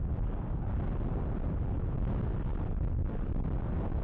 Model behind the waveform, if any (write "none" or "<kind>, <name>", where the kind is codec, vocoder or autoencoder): none